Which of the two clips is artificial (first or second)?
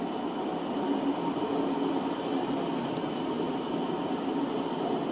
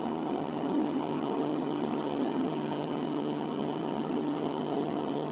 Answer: second